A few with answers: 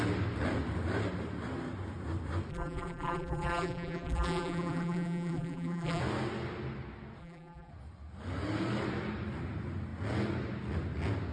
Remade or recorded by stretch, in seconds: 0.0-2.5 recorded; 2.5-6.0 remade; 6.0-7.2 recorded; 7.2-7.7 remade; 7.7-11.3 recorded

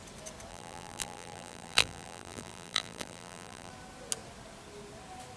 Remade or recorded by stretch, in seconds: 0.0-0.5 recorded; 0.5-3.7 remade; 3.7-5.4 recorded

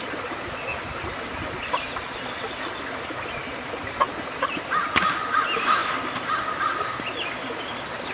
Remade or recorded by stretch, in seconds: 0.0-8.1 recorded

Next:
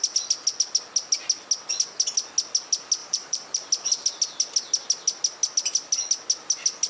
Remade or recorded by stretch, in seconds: 0.0-3.0 recorded; 3.0-3.7 remade; 3.7-6.9 recorded

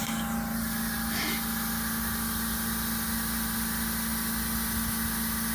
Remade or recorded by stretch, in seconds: 0.0-5.5 recorded

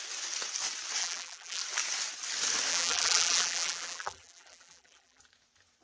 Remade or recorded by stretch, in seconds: 0.0-1.0 recorded; 1.0-1.6 remade; 1.6-2.7 recorded; 2.7-5.2 remade; 5.2-5.8 recorded

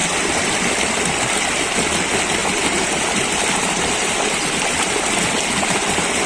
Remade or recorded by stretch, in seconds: 0.0-1.0 remade; 1.0-2.4 recorded; 2.4-6.3 remade